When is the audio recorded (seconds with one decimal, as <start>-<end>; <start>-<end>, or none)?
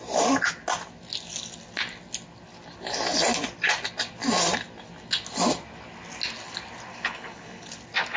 0.0-6.9; 7.7-8.2